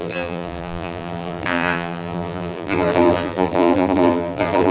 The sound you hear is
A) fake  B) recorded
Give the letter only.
A